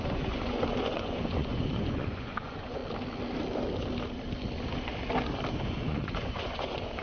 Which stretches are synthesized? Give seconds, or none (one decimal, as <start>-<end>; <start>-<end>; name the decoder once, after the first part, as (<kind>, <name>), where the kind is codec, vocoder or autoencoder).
0.0-2.8 (vocoder, Vocos); 5.5-7.0

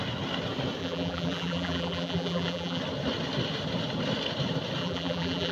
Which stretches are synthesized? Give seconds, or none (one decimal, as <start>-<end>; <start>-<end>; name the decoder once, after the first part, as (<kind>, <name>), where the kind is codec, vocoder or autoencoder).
0.8-2.8 (vocoder, BigVGAN v2); 4.8-5.5

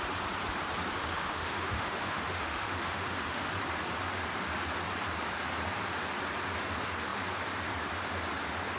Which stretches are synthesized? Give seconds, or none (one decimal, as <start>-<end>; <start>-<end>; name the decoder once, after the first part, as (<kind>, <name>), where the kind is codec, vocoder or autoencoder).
1.0-3.5 (autoencoder, DAC-VAE)

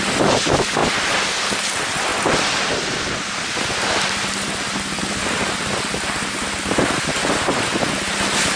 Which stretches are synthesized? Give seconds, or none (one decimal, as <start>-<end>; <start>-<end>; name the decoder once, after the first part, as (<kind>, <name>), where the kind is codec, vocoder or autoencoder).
none

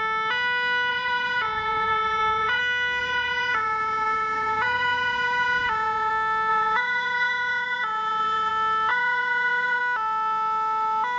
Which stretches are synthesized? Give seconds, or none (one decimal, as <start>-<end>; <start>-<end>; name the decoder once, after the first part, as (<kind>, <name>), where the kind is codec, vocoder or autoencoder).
0.9-2.6 (vocoder, Vocos); 3.0-6.1; 6.5-8.5; 8.9-9.8

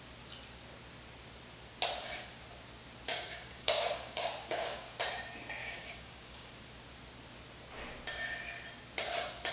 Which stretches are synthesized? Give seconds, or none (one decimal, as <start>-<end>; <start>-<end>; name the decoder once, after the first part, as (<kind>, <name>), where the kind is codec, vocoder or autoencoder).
3.1-5.0 (codec, DAC); 5.6-6.5

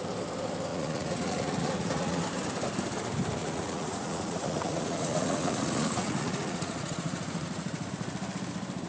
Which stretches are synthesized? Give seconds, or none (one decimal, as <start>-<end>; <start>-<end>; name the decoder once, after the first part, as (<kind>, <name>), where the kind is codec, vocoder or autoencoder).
0.7-2.2 (vocoder, Vocos); 3.4-7.9

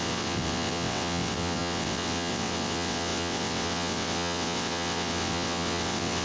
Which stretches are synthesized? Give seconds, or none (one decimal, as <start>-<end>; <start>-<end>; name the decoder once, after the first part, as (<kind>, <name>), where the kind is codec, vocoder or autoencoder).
0.0-6.2 (vocoder, WaveNeXt)